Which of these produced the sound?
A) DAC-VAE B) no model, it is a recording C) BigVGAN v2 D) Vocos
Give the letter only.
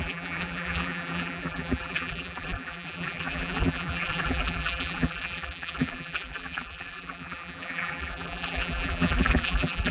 C